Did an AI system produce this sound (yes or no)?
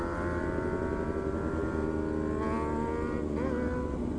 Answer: no